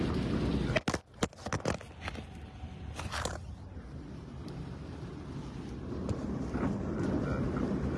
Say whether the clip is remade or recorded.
recorded